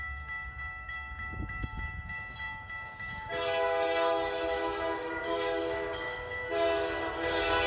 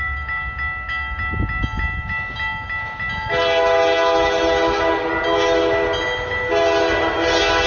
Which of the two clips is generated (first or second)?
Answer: first